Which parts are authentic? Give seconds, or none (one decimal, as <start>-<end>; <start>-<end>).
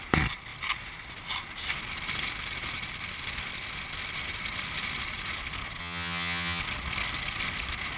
0.0-5.8; 6.6-8.0